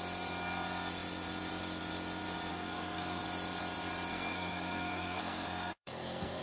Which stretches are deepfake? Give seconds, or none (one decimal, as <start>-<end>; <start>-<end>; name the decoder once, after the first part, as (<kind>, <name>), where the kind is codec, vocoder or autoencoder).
2.5-3.2 (codec, SNAC); 4.1-6.4